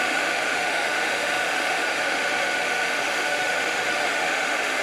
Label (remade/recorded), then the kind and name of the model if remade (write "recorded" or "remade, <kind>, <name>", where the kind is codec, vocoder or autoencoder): remade, autoencoder, DAC-VAE